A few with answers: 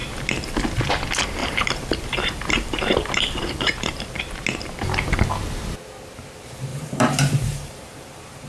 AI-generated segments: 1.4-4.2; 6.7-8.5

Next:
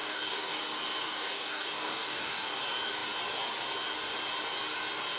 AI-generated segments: 0.0-0.6; 1.0-2.6

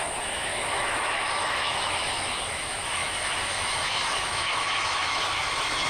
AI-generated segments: 0.0-5.9

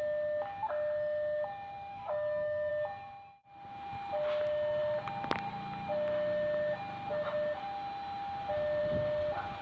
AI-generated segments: 1.9-2.7